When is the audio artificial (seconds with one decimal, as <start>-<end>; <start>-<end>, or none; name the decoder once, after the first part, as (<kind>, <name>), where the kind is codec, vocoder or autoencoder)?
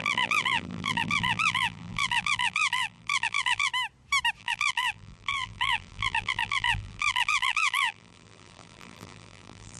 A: 0.0-3.7 (vocoder, BigVGAN v2); 4.4-9.8